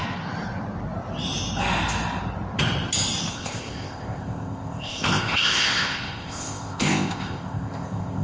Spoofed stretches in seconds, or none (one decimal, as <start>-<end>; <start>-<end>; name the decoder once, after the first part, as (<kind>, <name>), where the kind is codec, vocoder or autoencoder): 3.3-8.2 (codec, ZipCodec)